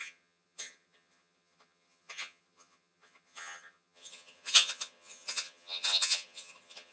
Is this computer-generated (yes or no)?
yes